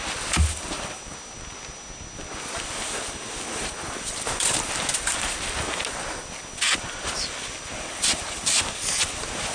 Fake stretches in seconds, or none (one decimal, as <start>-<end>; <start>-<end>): none